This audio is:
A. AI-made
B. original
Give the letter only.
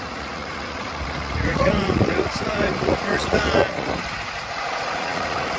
A